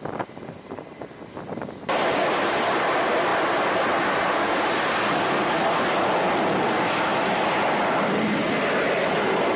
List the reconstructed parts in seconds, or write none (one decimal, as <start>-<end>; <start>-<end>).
none